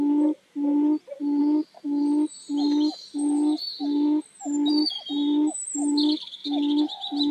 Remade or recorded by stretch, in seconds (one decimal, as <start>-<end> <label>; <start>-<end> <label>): 0.0-7.3 recorded